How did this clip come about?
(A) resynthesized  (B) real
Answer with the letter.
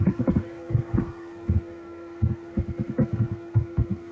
A